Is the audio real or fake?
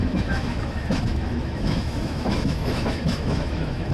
fake